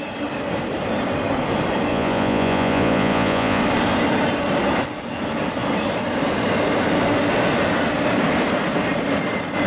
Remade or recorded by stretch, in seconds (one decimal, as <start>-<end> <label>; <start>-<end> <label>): 0.0-1.9 recorded; 1.9-3.6 remade; 3.6-9.7 recorded